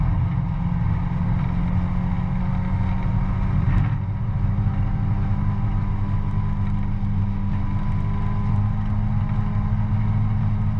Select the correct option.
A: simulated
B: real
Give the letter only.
B